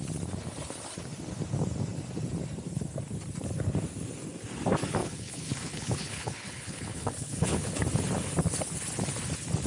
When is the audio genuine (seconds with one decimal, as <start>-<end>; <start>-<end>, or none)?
0.0-5.0; 7.8-9.7